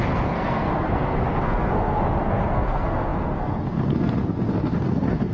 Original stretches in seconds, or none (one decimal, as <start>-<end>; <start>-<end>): none